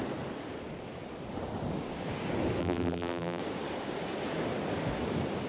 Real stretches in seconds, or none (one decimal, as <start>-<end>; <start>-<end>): 0.0-2.6; 3.4-5.5